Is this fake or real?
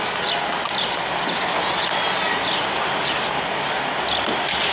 real